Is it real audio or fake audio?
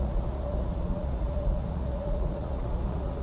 fake